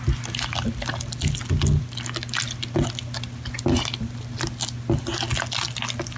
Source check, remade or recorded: recorded